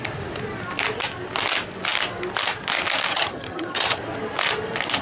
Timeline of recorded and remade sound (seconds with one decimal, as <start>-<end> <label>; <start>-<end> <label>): 0.0-3.1 recorded; 3.1-4.0 remade; 4.0-5.0 recorded